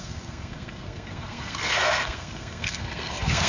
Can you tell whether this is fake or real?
fake